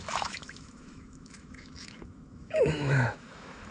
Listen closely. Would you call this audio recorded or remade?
remade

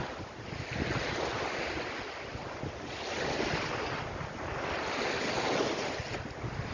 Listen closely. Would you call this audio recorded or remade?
recorded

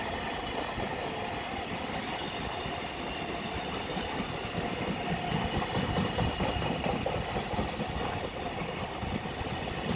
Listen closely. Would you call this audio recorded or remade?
recorded